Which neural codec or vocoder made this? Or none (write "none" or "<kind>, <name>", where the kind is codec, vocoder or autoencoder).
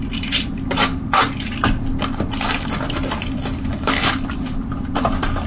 vocoder, BigVGAN v2